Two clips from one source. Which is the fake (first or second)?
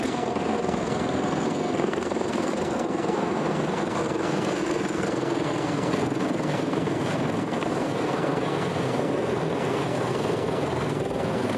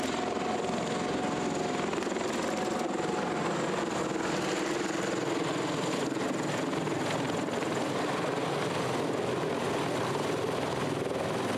first